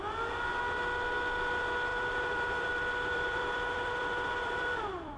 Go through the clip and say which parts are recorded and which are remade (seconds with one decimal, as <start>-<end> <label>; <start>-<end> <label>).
0.0-1.9 recorded; 1.9-5.2 remade